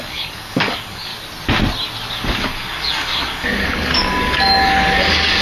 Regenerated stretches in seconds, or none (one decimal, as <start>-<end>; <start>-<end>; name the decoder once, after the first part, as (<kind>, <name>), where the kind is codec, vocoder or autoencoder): 0.0-1.1 (codec, DAC); 2.1-5.4

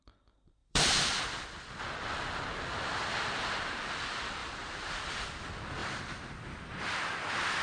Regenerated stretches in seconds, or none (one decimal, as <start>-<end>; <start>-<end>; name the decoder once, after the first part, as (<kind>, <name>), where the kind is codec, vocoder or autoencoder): 0.6-1.2 (vocoder, BigVGAN v2); 4.4-5.2; 5.8-6.8

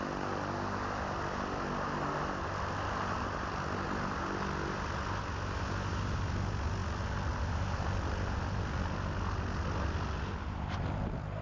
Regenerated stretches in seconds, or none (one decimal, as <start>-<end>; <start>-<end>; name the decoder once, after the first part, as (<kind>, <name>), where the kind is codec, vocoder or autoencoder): none

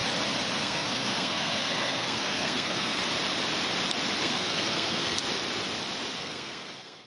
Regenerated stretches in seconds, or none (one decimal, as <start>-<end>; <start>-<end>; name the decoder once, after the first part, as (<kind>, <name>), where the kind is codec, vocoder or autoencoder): 0.6-3.0 (codec, SNAC); 4.2-5.2; 6.2-7.1

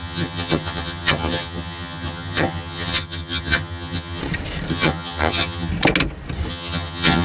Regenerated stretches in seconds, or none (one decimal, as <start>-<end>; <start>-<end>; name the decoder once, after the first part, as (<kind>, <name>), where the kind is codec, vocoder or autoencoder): 0.0-4.2 (vocoder, HiFi-GAN); 4.7-5.7; 6.5-7.2